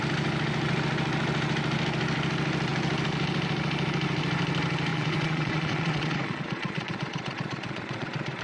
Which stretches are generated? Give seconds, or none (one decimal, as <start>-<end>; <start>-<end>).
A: 4.9-8.4